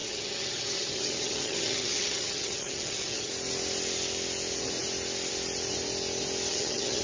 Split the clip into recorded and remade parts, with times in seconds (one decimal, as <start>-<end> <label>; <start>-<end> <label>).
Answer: 0.0-3.3 remade; 3.3-6.5 recorded; 6.5-7.0 remade